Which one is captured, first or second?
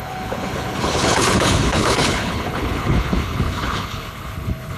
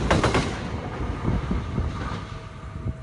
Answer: second